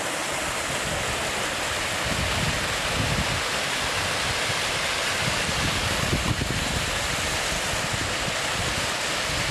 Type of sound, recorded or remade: recorded